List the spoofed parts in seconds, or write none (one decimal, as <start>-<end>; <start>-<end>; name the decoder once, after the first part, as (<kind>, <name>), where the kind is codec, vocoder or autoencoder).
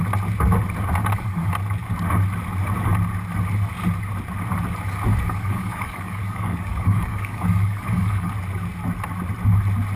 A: 1.0-1.5 (codec, DAC); 5.1-8.3